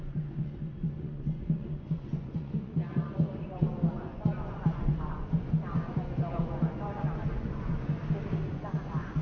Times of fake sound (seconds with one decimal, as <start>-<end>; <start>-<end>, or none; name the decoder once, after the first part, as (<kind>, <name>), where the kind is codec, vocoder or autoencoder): 0.0-8.0 (vocoder, Vocos); 8.5-9.2